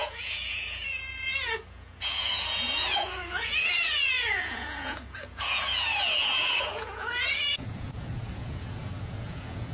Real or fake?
fake